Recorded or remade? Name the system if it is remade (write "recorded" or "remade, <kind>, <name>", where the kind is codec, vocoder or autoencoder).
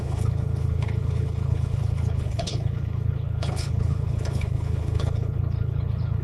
remade, codec, HILCodec